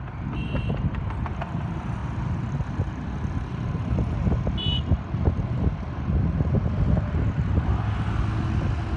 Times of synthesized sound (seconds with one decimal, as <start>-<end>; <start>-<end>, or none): none